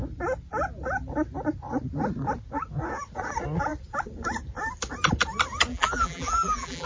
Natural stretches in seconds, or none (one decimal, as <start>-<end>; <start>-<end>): 0.0-5.7